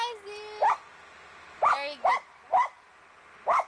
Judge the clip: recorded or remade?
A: recorded